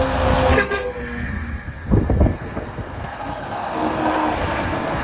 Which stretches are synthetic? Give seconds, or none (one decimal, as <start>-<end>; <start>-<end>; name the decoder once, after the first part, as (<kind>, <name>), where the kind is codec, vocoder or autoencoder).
0.0-5.0 (codec, SNAC)